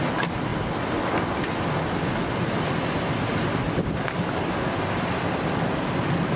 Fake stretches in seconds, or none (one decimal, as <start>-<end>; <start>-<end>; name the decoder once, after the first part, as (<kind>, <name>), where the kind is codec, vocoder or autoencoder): none